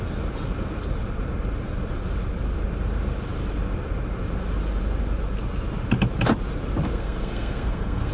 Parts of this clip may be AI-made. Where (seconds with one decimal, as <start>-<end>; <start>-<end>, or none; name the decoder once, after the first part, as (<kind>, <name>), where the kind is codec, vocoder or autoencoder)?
6.9-8.1 (codec, SNAC)